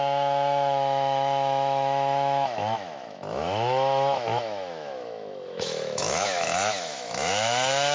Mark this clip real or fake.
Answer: fake